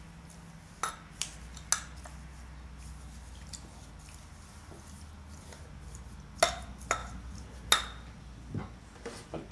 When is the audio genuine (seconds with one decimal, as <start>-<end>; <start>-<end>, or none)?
0.0-9.5